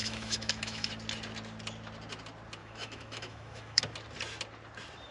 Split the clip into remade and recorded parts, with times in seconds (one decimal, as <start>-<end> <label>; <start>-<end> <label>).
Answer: 0.0-0.9 remade; 0.9-2.6 recorded; 2.6-3.8 remade; 3.8-5.1 recorded